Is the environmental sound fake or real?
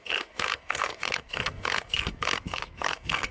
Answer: fake